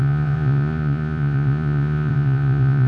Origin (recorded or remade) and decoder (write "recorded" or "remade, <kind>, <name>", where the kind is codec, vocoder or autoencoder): remade, vocoder, Vocos